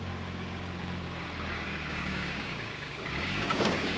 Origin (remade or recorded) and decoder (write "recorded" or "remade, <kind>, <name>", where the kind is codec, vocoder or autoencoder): remade, codec, DAC